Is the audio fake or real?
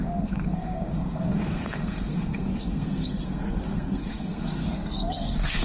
fake